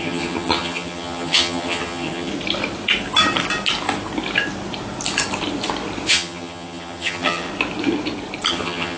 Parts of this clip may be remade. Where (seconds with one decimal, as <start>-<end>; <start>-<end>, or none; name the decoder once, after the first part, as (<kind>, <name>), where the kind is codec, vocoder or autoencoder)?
0.0-2.3 (vocoder, HiFi-GAN); 6.1-7.5; 8.5-9.0

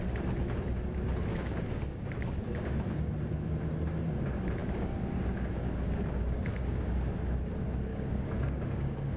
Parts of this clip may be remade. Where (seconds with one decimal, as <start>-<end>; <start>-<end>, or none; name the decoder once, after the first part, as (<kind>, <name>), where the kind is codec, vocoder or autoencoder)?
1.3-3.1 (codec, DAC); 4.6-6.9; 7.9-9.2

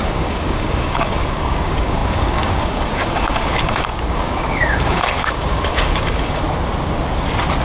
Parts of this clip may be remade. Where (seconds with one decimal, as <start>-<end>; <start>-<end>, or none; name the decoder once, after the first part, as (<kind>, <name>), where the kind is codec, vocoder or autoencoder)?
0.0-6.4 (codec, DAC)

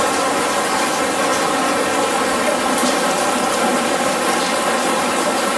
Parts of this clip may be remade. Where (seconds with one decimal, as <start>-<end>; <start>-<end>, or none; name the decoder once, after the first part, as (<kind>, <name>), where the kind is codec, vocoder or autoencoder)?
none